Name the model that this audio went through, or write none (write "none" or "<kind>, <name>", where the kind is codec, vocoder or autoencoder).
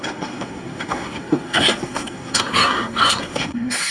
codec, SNAC